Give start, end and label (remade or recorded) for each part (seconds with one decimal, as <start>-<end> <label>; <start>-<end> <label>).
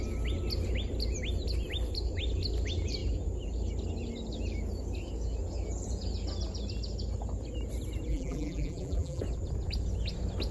0.0-8.1 recorded; 8.1-9.2 remade; 9.2-10.5 recorded